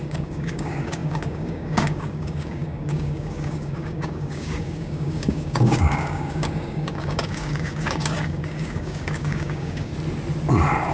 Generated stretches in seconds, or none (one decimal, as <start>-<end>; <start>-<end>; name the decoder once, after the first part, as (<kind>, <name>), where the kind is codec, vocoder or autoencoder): 0.0-9.9 (codec, DAC)